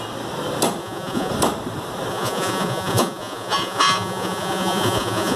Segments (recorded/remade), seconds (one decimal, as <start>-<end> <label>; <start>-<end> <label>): 0.0-0.8 recorded; 0.8-1.3 remade; 1.3-2.1 recorded; 2.1-5.4 remade